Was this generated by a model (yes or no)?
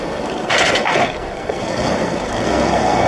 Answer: yes